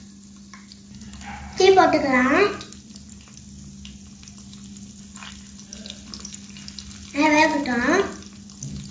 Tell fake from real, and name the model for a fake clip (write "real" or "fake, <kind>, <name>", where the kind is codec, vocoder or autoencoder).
real